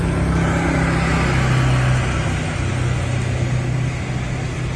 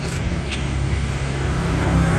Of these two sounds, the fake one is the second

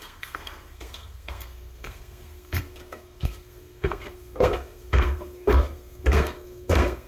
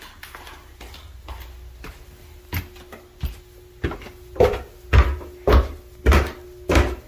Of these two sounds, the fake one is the first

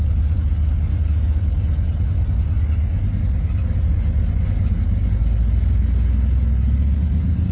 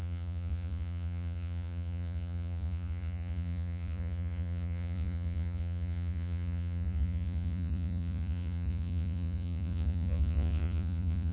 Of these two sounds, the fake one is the second